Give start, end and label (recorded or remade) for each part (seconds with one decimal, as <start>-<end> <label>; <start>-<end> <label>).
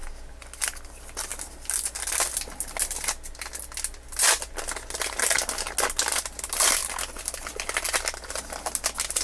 0.0-9.2 recorded